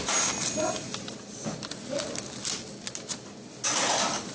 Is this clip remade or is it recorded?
recorded